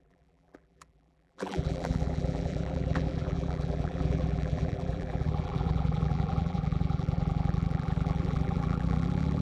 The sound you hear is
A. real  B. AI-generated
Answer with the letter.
B